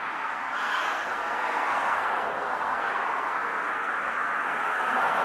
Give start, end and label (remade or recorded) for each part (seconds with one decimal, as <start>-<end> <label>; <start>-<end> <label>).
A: 0.0-5.2 remade